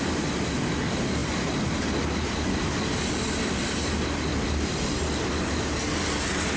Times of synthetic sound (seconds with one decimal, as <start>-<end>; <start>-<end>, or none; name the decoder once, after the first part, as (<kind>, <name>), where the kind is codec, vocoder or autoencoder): none